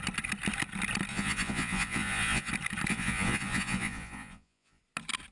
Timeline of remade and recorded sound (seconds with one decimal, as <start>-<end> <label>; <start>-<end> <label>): 0.0-1.1 recorded; 1.1-2.5 remade; 2.5-2.9 recorded; 2.9-4.8 remade; 4.8-5.3 recorded